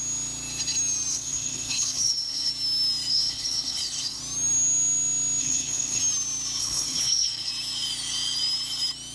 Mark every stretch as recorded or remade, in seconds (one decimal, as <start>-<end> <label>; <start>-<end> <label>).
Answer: 0.0-1.1 recorded; 1.1-2.5 remade; 2.5-3.1 recorded; 3.1-4.2 remade; 4.2-5.4 recorded; 5.4-6.0 remade; 6.0-6.6 recorded; 6.6-7.5 remade; 7.5-9.1 recorded